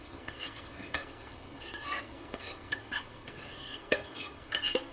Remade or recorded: remade